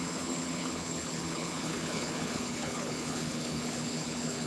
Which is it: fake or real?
fake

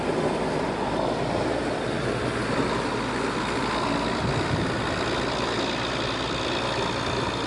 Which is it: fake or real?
real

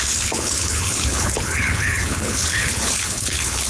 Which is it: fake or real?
fake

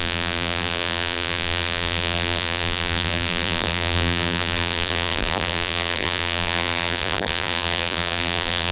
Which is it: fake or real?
fake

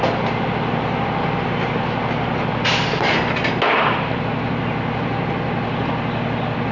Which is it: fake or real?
real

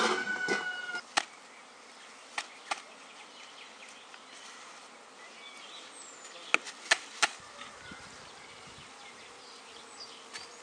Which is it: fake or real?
real